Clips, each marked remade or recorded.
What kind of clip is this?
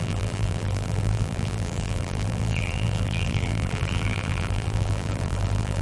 remade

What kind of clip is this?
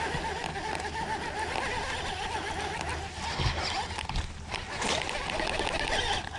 recorded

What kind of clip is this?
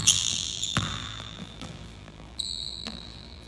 remade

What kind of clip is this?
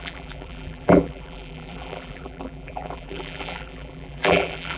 remade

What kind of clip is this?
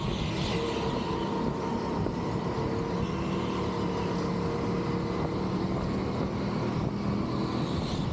recorded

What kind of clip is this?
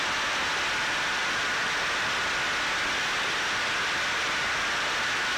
remade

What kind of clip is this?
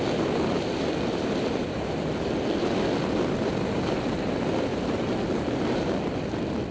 remade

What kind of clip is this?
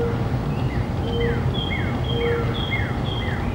recorded